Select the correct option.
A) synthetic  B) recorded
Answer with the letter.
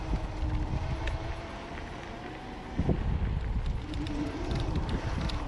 B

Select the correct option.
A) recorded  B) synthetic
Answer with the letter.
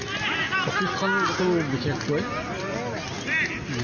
A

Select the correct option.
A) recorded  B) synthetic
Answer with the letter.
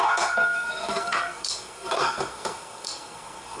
B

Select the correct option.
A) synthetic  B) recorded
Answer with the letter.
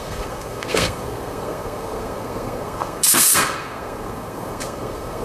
A